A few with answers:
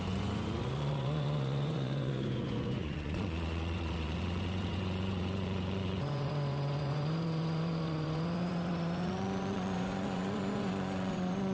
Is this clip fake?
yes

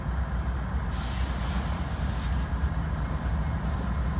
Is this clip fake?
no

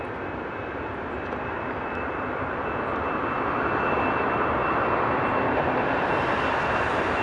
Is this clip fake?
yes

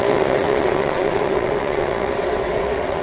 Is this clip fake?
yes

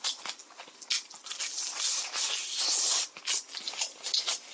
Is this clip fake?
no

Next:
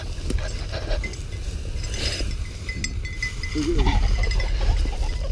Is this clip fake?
no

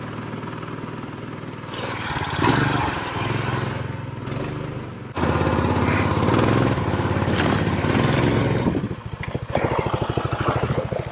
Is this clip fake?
no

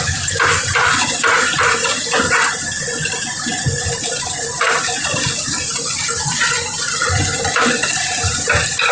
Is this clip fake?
no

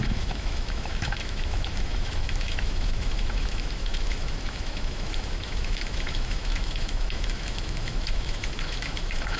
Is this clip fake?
yes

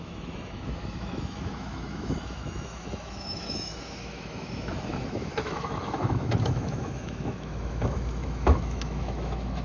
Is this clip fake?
yes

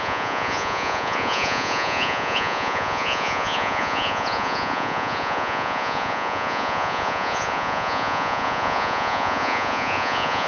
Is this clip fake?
yes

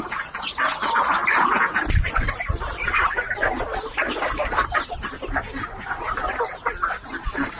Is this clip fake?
no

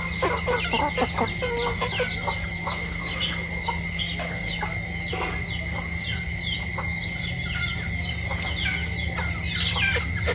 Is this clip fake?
no